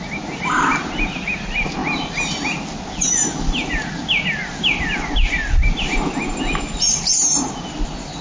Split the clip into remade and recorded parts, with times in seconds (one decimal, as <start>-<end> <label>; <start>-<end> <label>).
0.0-8.2 recorded